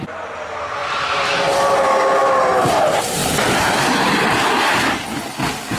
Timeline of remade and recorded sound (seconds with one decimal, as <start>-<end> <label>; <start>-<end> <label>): 0.0-0.8 recorded; 0.8-1.3 remade; 1.3-2.2 recorded; 2.2-2.8 remade; 2.8-3.2 recorded; 3.2-4.9 remade; 4.9-5.8 recorded